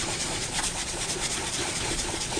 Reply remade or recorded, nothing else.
remade